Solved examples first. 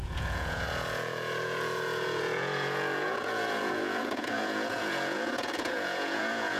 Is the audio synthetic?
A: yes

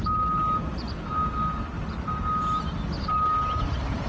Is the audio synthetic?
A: no